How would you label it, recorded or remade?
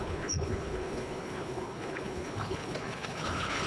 remade